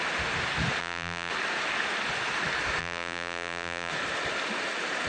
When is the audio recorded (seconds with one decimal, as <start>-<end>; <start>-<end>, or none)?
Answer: 0.0-0.8; 1.3-2.8; 3.9-5.1